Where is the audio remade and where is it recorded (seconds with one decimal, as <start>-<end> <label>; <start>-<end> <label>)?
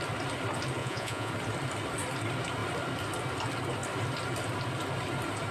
0.0-0.8 recorded; 0.8-1.3 remade; 1.3-5.5 recorded